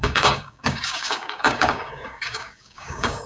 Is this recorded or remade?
remade